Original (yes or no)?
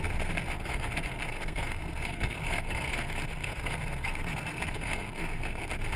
no